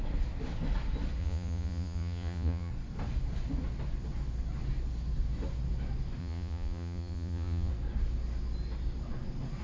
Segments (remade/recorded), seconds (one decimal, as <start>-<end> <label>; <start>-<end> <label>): 0.0-1.2 recorded; 1.2-2.7 remade; 2.7-6.2 recorded; 6.2-7.7 remade; 7.7-9.6 recorded